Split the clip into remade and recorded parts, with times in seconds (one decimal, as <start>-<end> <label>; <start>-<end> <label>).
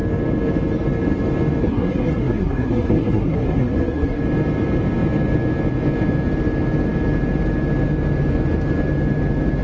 0.0-1.6 recorded; 1.6-4.2 remade; 4.2-9.6 recorded